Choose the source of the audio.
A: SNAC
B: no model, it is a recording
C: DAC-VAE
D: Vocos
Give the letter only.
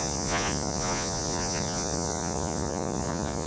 D